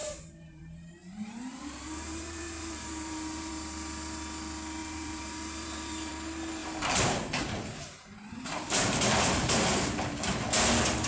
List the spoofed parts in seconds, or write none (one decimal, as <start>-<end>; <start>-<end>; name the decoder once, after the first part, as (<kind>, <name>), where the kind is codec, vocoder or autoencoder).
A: 0.0-0.6 (vocoder, BigVGAN v2); 1.0-3.5; 4.8-6.1; 6.6-10.3

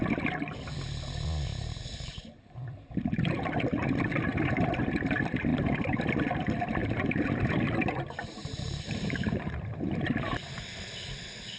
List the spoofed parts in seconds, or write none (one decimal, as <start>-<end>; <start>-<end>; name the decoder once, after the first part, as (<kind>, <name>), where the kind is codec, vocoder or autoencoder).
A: 1.5-2.5 (vocoder, BigVGAN v2); 6.8-9.9

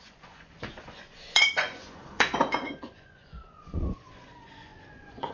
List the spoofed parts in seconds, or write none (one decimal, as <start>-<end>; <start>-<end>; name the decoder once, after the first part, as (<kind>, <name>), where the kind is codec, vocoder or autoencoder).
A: 0.0-5.3 (vocoder, Vocos)

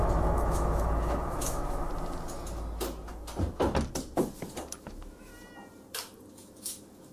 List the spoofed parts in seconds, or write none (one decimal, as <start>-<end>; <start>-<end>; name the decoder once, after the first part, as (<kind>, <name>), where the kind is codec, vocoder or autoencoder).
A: 0.0-1.9 (autoencoder, DAC-VAE); 4.8-5.3; 6.3-7.1